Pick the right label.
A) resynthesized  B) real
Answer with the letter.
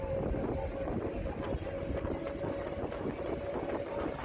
B